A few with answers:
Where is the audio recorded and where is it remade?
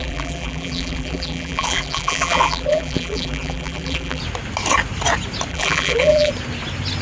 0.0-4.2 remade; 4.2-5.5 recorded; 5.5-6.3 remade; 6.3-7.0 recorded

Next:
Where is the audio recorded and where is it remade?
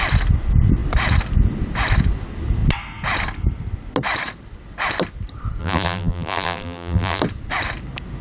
0.0-5.6 recorded; 5.6-7.2 remade; 7.2-8.2 recorded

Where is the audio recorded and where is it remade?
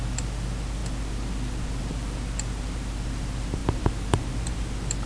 0.0-0.8 remade; 0.8-1.8 recorded; 1.8-3.6 remade; 3.6-4.3 recorded; 4.3-5.1 remade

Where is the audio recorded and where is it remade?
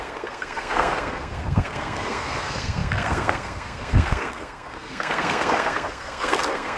0.0-6.8 remade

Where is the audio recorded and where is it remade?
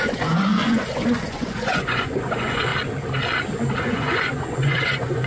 0.0-2.7 remade; 2.7-3.8 recorded; 3.8-5.3 remade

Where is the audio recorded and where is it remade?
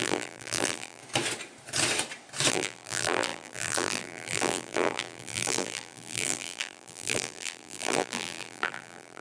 0.0-1.0 remade; 1.0-2.5 recorded; 2.5-9.2 remade